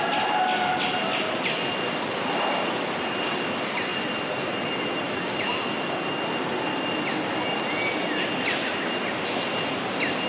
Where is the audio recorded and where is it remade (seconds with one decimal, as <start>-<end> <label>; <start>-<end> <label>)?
0.0-10.3 recorded